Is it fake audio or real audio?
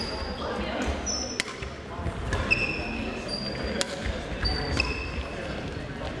real